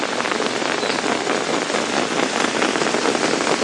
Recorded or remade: recorded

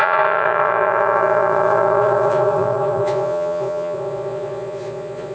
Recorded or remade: remade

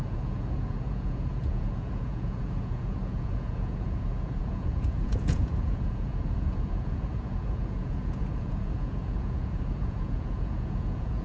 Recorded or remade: remade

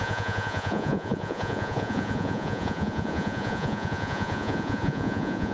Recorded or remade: remade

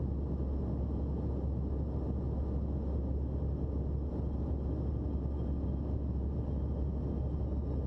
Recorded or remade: recorded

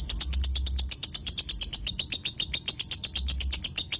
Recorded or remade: recorded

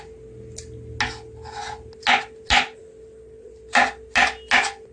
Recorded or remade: recorded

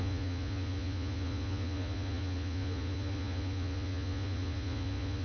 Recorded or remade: remade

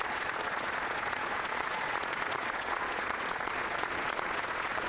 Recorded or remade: remade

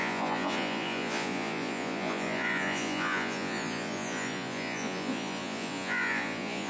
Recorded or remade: remade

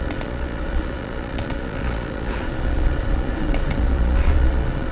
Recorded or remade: remade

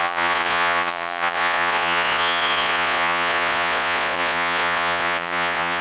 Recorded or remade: remade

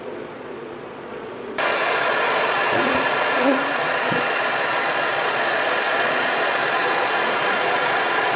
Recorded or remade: remade